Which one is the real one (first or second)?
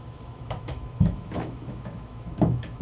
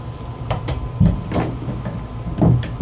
second